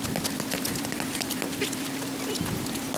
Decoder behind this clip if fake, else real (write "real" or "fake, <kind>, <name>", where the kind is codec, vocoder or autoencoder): real